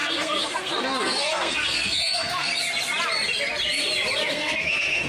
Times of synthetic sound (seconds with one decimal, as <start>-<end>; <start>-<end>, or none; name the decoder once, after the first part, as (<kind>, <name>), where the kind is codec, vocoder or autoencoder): 0.0-2.5 (codec, SNAC); 4.3-5.1